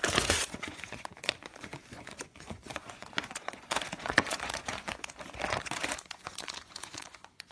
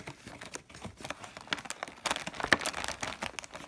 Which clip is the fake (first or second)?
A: first